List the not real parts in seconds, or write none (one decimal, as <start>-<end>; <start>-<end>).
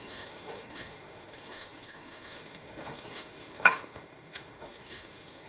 0.0-5.5